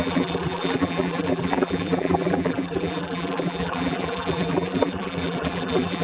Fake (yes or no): yes